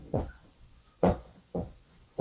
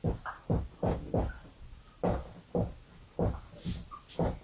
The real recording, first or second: second